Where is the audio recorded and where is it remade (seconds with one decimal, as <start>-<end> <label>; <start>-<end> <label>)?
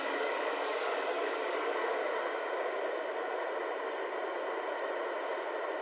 0.0-1.9 remade; 1.9-5.8 recorded